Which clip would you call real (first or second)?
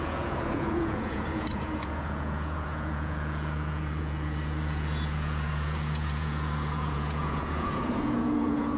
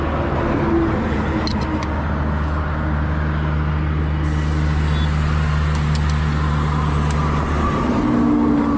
second